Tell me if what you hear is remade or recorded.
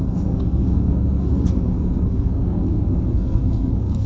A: remade